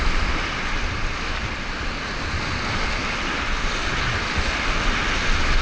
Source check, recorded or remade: recorded